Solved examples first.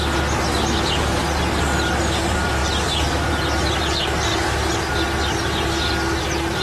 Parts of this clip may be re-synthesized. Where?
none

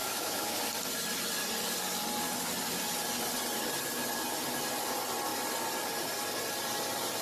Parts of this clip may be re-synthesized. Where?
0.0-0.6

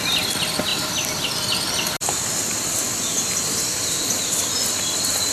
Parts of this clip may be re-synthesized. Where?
none

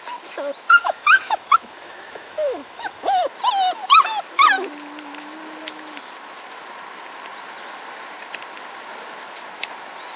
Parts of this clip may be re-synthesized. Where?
0.8-3.3

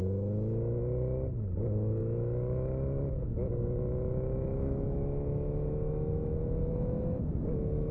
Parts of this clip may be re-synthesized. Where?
0.0-0.8; 1.6-7.9

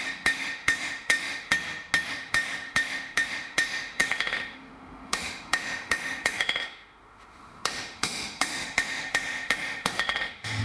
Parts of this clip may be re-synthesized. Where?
0.0-1.5; 2.1-10.6